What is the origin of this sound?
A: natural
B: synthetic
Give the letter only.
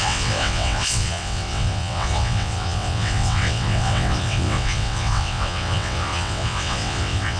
B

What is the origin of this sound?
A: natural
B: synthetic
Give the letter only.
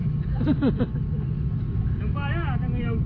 A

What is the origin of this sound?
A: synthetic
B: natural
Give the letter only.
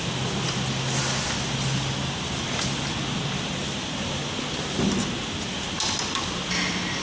B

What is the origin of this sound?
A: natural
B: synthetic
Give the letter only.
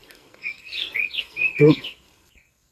B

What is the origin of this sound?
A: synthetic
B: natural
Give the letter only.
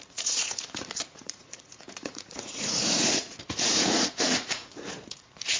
A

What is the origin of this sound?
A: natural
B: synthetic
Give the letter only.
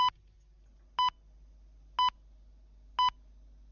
A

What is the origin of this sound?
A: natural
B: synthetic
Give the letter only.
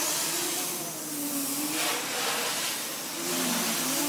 A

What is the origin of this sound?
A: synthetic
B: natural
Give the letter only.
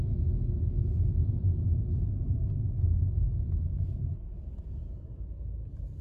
B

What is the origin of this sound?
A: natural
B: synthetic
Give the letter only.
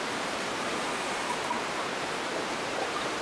B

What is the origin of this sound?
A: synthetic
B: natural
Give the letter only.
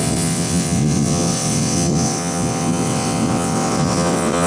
A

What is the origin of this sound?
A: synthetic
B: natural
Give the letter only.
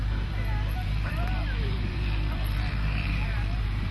A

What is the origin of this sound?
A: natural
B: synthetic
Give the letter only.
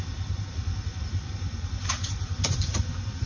B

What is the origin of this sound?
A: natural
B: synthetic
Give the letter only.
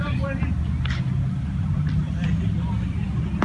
A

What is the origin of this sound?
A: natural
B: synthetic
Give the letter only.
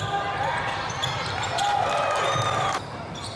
A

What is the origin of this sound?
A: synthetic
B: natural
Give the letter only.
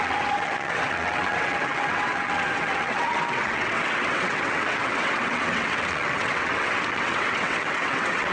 A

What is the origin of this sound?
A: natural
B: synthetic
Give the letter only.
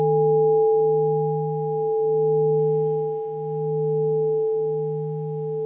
A